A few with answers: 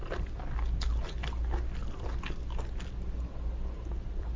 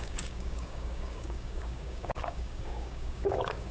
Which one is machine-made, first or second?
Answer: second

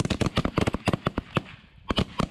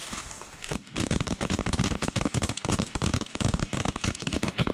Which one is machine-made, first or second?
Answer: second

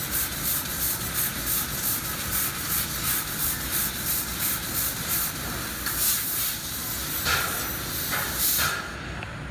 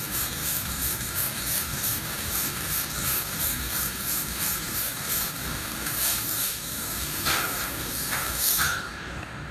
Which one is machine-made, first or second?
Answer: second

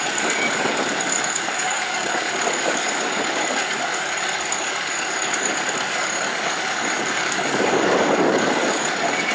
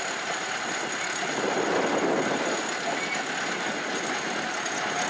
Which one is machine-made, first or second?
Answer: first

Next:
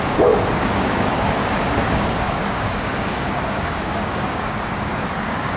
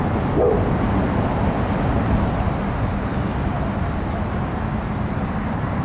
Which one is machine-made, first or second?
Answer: first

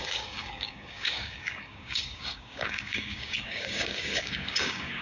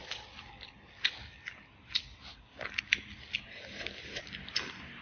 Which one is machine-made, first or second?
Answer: first